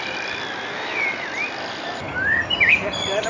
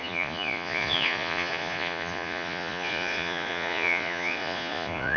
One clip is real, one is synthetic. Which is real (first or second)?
first